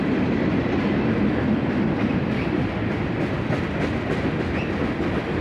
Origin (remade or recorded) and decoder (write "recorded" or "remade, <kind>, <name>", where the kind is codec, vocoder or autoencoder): recorded